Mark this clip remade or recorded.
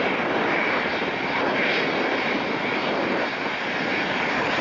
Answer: recorded